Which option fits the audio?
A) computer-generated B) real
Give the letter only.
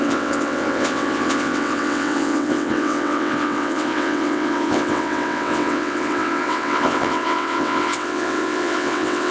A